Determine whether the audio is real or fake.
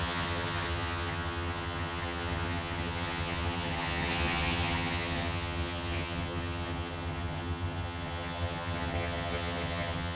fake